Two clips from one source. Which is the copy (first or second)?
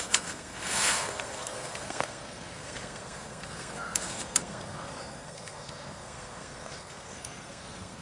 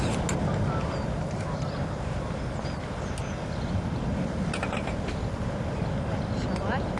first